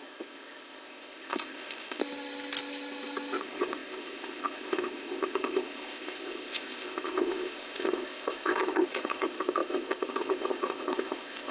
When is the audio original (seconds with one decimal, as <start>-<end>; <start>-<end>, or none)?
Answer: 2.0-3.4